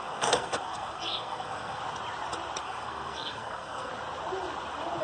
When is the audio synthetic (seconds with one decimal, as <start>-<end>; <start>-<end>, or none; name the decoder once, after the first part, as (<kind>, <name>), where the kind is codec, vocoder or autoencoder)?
0.0-1.8 (codec, SNAC); 2.6-3.9